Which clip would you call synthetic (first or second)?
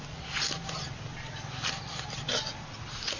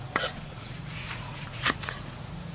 second